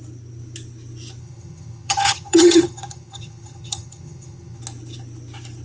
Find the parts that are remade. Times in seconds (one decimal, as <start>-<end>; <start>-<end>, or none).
1.2-4.6